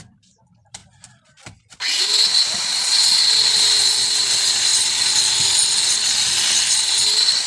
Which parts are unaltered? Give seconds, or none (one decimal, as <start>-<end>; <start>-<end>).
0.8-3.2; 4.7-6.3